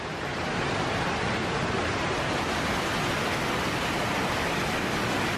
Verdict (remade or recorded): recorded